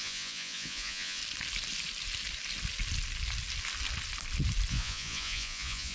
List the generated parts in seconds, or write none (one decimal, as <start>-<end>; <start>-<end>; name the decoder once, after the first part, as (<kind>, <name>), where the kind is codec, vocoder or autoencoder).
0.0-1.2 (vocoder, Vocos); 4.7-5.9